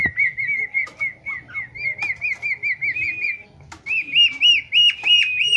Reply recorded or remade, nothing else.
recorded